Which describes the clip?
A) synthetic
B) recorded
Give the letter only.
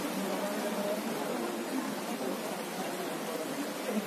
B